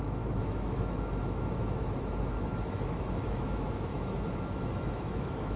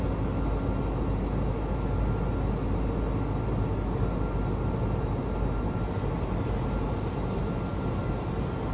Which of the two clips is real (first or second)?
second